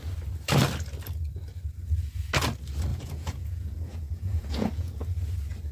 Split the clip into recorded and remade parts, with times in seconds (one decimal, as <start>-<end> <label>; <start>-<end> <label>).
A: 0.0-2.9 recorded; 2.9-4.9 remade; 4.9-5.7 recorded